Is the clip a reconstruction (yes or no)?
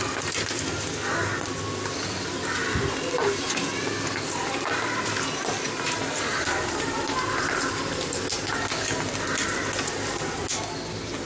no